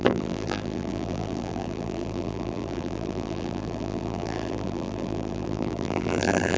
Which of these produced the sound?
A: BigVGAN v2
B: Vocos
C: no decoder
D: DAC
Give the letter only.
A